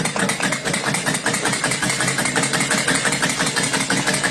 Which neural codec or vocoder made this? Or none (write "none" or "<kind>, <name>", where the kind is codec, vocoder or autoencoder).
none